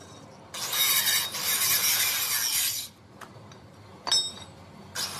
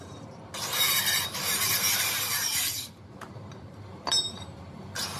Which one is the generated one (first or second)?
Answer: second